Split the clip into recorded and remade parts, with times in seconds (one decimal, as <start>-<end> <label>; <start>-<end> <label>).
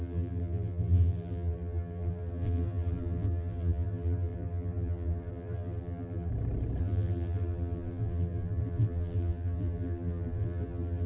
0.0-6.3 remade; 6.3-6.8 recorded; 6.8-11.1 remade